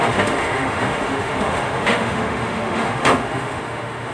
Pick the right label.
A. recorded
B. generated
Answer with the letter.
B